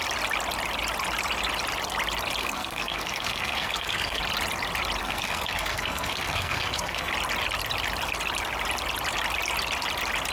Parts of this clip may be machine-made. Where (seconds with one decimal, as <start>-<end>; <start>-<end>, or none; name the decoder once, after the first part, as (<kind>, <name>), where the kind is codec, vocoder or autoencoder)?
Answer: 2.4-4.2 (codec, SNAC); 5.0-7.1